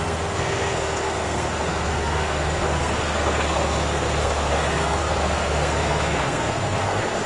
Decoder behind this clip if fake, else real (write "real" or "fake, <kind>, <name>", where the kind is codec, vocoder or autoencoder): fake, codec, SNAC